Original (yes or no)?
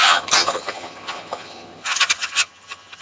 no